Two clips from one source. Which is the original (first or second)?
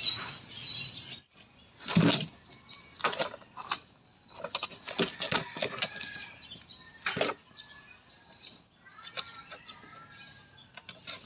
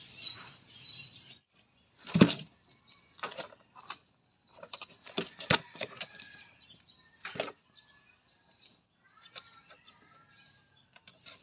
first